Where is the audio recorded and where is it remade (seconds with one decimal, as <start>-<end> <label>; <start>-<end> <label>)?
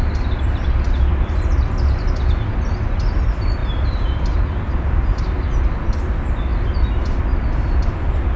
0.0-3.6 recorded; 3.6-4.4 remade; 4.4-6.5 recorded; 6.5-7.2 remade; 7.2-8.4 recorded